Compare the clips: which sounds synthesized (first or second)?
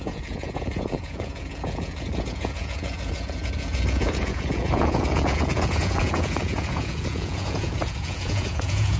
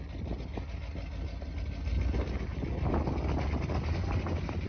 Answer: first